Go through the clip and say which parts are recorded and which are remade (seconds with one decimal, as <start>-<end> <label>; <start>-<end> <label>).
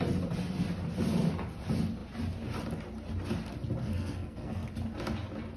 0.0-3.8 recorded; 3.8-4.7 remade; 4.7-5.6 recorded